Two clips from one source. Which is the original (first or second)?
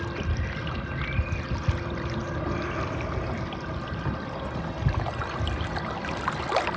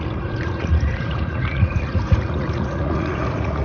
first